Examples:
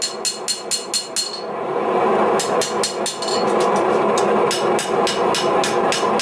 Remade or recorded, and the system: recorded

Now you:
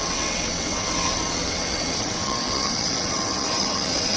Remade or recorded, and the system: remade, vocoder, WaveNeXt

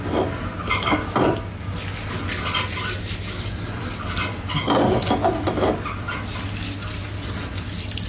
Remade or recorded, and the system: recorded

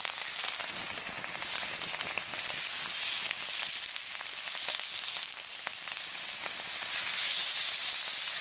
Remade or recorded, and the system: recorded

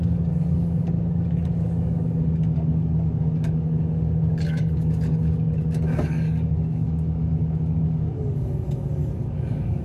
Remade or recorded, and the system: remade, codec, DAC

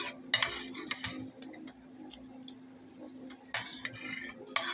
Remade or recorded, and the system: recorded